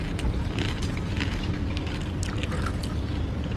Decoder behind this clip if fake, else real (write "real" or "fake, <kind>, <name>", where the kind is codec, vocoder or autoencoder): real